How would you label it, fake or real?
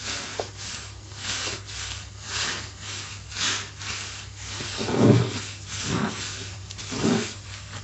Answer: fake